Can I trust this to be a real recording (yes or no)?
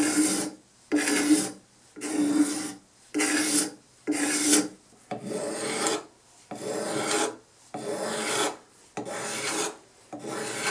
yes